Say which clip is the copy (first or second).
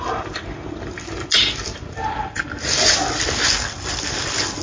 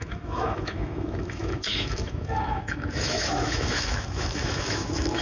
second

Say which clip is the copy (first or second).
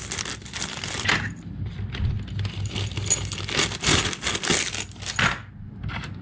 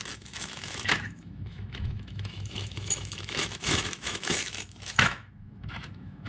second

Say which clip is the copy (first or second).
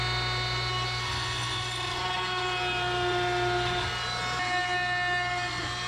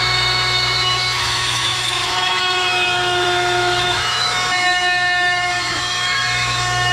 second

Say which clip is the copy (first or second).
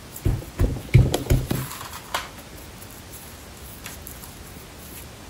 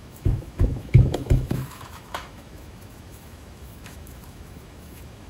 second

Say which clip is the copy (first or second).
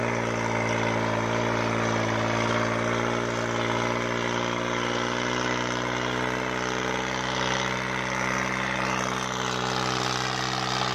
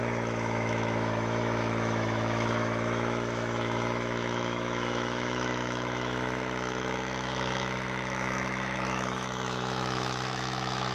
second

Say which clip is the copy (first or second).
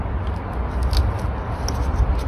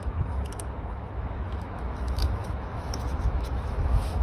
second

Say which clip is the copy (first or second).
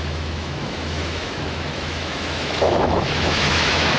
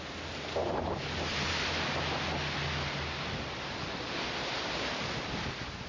first